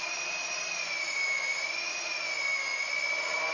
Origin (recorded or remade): recorded